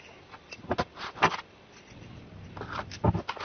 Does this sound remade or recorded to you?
recorded